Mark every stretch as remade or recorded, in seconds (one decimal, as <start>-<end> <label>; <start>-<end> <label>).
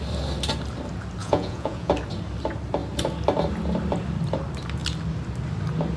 0.0-1.2 recorded; 1.2-1.9 remade; 1.9-6.0 recorded